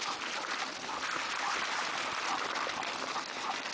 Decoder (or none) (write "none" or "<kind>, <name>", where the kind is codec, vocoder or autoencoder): none